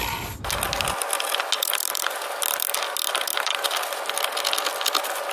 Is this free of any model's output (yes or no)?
yes